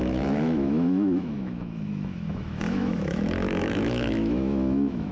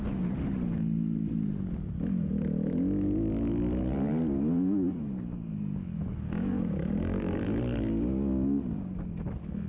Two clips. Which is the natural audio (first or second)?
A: second